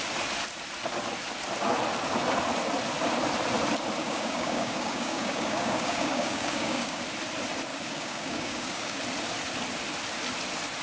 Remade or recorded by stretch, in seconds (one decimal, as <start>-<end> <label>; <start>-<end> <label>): 0.0-4.0 recorded; 4.0-7.0 remade; 7.0-7.7 recorded; 7.7-9.0 remade; 9.0-10.8 recorded